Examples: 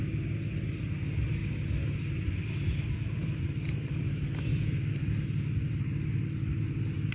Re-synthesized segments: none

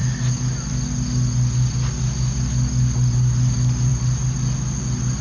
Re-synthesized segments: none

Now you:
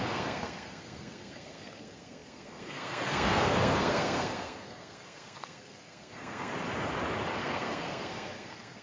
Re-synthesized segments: 0.0-6.5; 7.4-8.8

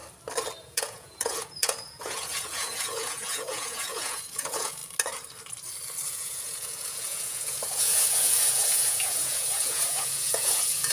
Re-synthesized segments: 0.6-4.8; 6.1-10.9